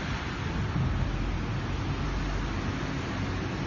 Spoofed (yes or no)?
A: no